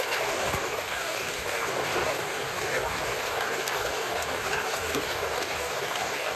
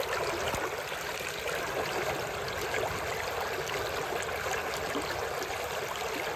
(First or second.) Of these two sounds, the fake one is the first